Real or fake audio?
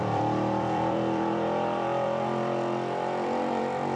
fake